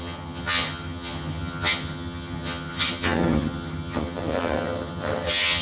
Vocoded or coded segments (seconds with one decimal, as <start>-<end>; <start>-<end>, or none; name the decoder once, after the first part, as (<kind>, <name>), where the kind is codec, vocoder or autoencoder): 0.0-5.6 (vocoder, HiFi-GAN)